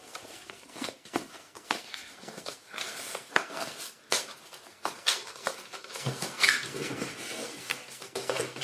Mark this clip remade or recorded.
remade